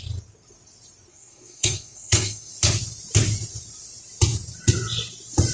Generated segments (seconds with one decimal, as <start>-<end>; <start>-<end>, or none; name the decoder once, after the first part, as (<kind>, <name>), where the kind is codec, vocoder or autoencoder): 1.1-2.5 (codec, SNAC)

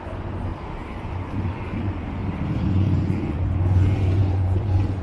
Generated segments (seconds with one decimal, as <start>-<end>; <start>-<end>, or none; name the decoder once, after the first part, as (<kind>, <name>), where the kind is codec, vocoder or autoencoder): 0.0-0.5 (vocoder, Vocos); 1.0-2.2; 2.7-5.0